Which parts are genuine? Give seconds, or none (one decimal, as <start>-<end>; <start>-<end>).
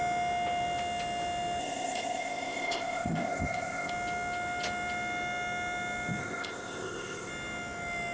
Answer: 0.0-1.6; 3.9-6.2; 7.3-8.1